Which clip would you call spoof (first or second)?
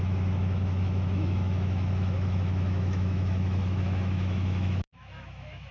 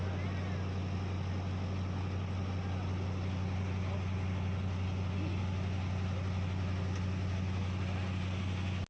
first